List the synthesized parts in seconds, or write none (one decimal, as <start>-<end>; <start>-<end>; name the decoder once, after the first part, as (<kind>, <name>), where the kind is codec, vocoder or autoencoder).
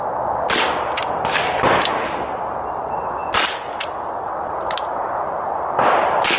none